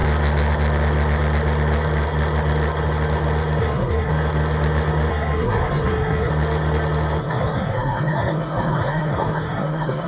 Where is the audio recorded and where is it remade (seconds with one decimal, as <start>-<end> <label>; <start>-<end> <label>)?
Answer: 0.0-3.6 recorded; 3.6-4.1 remade; 4.1-5.1 recorded; 5.1-6.3 remade; 6.3-7.2 recorded; 7.2-10.1 remade

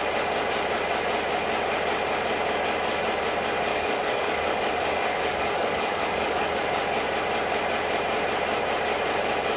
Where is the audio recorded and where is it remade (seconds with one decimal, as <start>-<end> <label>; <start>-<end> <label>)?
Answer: 0.0-3.7 recorded; 3.7-6.6 remade; 6.6-9.6 recorded

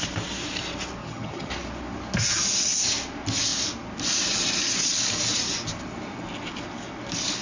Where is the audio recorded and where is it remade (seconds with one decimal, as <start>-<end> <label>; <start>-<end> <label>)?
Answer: 0.0-1.0 recorded; 1.0-1.5 remade; 1.5-7.4 recorded